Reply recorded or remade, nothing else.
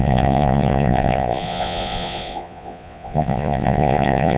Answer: remade